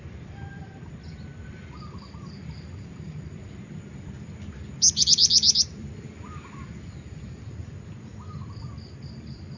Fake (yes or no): yes